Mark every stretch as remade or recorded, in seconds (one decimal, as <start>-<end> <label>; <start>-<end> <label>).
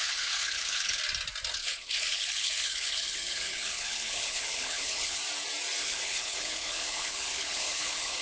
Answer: 0.0-1.0 remade; 1.0-1.5 recorded; 1.5-5.2 remade; 5.2-5.8 recorded; 5.8-8.2 remade